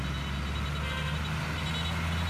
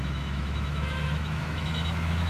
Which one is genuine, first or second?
first